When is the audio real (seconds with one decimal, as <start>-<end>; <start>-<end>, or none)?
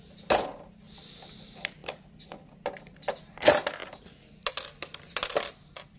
0.0-6.0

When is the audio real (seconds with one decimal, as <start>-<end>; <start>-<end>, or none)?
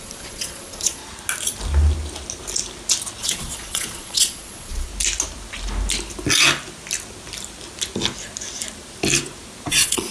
1.0-3.2; 4.9-9.7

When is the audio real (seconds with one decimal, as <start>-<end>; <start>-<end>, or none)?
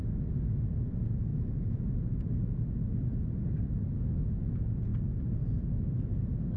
0.0-6.6